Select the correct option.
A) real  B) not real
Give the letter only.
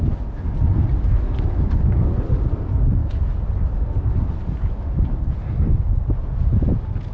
A